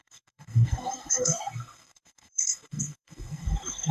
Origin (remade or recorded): remade